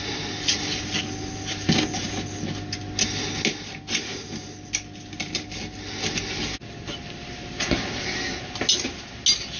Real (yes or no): yes